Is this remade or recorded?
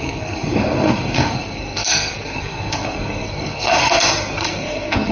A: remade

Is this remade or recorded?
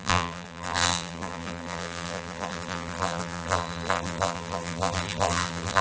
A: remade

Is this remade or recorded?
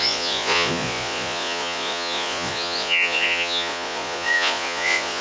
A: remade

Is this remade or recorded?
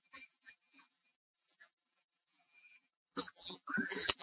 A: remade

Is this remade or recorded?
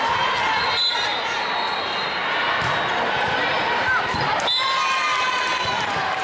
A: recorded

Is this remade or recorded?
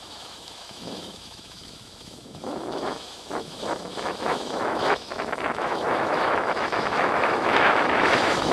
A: remade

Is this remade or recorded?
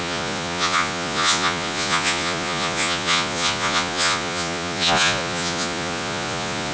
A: remade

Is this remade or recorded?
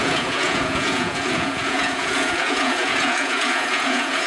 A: remade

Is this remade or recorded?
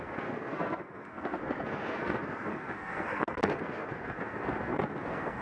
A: remade